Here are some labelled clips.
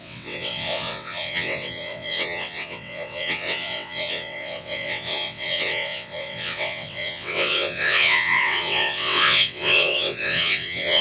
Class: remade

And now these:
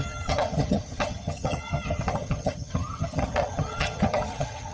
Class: remade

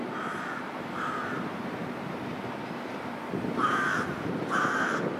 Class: remade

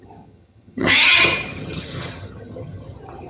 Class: remade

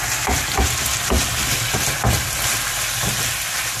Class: remade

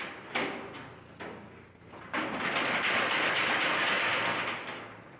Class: recorded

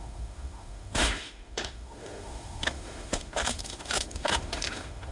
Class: remade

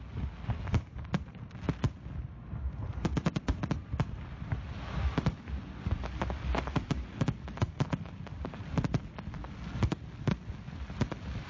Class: recorded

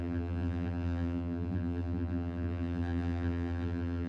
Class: remade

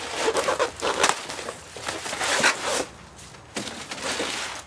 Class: recorded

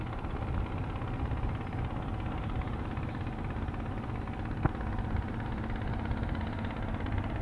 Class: recorded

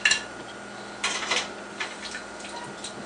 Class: recorded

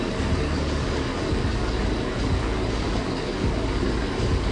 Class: remade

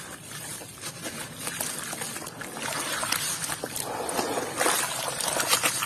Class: recorded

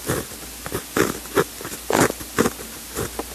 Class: recorded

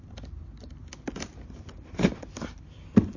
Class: recorded